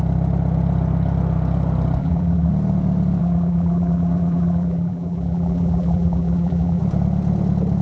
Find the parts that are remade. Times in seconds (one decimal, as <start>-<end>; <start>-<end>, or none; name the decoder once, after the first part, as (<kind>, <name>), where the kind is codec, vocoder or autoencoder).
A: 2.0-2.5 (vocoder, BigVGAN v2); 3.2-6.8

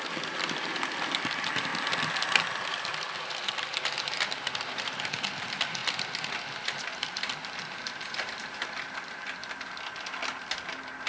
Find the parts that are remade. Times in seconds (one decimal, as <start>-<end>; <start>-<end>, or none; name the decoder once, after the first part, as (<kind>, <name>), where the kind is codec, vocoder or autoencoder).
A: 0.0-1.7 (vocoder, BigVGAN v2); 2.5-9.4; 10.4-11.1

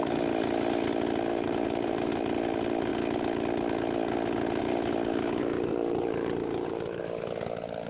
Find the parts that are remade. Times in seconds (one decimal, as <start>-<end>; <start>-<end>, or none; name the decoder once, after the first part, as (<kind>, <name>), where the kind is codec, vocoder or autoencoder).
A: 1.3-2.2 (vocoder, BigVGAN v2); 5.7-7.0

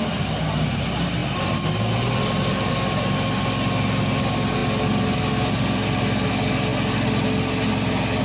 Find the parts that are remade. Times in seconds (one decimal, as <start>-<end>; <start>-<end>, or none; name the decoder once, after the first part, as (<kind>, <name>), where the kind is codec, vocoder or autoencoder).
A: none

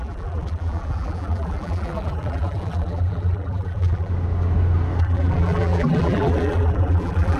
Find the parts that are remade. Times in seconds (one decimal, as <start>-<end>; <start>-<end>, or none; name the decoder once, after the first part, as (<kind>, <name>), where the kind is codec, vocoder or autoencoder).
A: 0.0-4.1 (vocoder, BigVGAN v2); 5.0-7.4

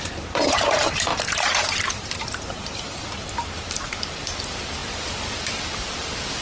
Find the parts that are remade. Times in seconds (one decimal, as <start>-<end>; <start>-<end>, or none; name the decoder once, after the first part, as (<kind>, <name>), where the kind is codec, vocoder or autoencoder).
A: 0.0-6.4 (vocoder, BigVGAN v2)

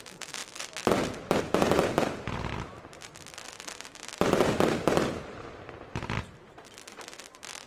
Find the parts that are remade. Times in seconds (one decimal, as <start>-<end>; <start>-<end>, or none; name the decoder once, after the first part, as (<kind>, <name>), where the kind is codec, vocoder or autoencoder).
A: none

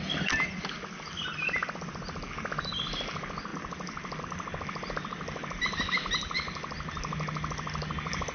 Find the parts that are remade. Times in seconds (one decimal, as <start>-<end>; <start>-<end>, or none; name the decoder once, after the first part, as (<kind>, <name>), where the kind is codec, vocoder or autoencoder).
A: none